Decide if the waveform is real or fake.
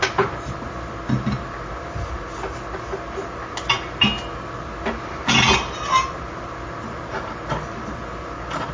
real